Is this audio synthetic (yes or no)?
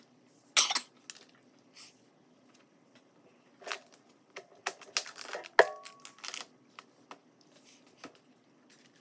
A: no